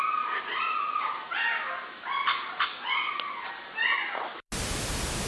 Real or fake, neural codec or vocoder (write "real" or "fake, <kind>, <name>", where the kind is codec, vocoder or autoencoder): real